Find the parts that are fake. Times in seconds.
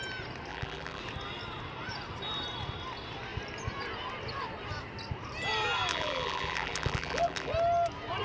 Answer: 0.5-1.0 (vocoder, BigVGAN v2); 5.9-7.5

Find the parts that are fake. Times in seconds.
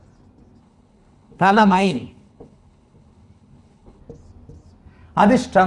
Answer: 0.6-4.0 (codec, HILCodec)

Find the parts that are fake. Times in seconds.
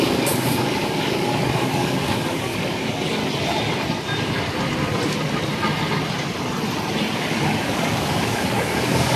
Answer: 0.0-3.2 (codec, DAC); 7.1-9.2